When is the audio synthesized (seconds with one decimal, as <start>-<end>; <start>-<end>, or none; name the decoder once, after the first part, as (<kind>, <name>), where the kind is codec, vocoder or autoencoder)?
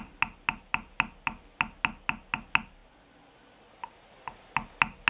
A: none